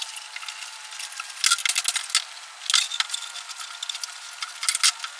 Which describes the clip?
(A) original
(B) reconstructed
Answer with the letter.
A